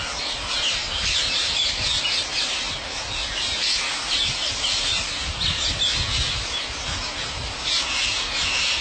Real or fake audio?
real